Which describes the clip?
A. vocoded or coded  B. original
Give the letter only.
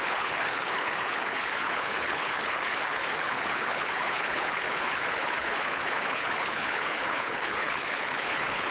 A